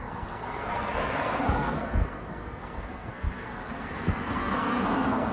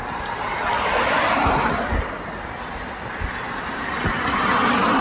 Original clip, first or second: second